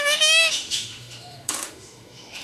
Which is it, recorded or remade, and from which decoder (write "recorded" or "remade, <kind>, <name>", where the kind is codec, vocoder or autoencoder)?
remade, autoencoder, DAC-VAE